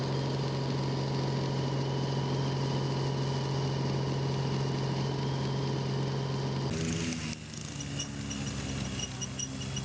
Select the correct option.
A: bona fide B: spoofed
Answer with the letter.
A